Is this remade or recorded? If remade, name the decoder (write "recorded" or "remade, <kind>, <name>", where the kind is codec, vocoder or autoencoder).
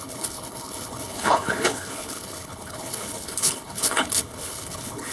remade, codec, HILCodec